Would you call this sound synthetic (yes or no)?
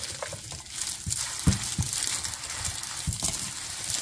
no